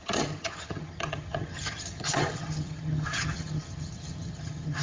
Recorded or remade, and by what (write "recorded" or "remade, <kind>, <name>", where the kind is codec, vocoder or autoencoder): remade, vocoder, HiFi-GAN